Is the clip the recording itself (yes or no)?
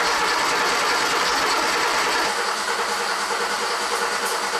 yes